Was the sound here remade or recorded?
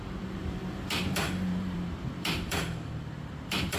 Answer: remade